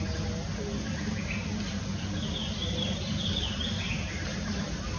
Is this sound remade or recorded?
recorded